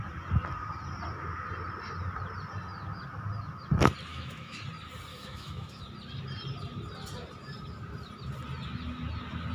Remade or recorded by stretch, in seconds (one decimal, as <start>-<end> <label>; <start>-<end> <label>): 0.0-4.1 recorded; 4.1-4.6 remade; 4.6-5.1 recorded; 5.1-5.8 remade; 5.8-9.5 recorded